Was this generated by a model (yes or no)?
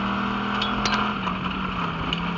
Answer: no